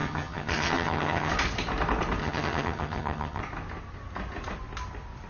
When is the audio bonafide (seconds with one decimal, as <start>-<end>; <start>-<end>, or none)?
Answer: 1.3-2.2; 3.4-5.3